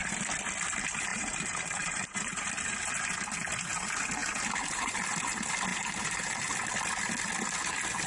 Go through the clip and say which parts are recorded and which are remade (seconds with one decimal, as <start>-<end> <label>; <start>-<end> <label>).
0.0-1.1 recorded; 1.1-2.5 remade; 2.5-4.2 recorded; 4.2-4.9 remade; 4.9-5.7 recorded; 5.7-6.5 remade; 6.5-8.1 recorded